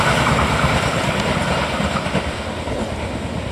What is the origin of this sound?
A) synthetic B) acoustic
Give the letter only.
B